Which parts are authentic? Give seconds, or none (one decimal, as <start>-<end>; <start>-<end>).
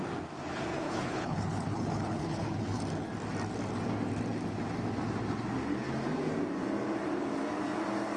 0.0-0.7; 2.8-8.2